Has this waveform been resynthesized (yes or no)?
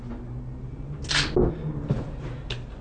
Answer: no